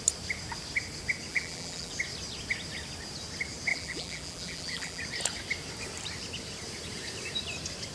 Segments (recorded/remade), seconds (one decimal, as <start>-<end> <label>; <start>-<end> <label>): 0.0-1.3 recorded; 1.3-1.9 remade; 1.9-3.7 recorded; 3.7-5.0 remade; 5.0-7.9 recorded